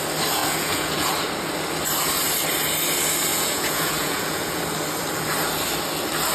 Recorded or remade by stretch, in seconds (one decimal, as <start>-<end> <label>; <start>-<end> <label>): 0.0-0.4 recorded; 0.4-1.1 remade; 1.1-3.3 recorded; 3.3-4.6 remade; 4.6-6.3 recorded